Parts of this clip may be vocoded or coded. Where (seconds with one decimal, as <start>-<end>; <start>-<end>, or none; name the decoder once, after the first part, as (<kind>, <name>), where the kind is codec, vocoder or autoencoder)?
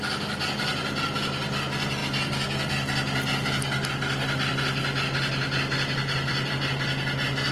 none